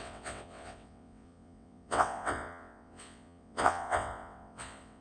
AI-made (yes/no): yes